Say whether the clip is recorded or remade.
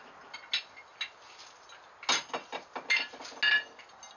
recorded